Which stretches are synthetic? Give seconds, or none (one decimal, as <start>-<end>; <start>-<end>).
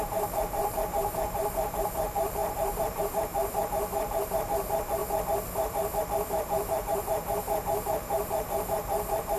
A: 0.0-5.0; 6.0-9.4